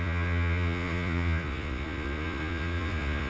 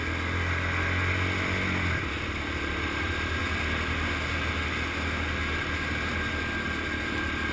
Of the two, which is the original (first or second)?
second